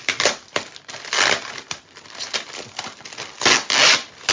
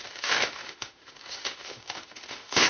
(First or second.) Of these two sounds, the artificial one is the second